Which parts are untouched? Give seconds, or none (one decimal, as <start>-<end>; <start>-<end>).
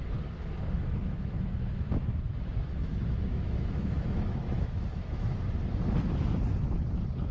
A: 0.0-1.0; 5.4-7.3